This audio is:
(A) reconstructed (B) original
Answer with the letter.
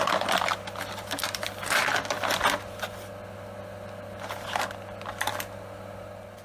B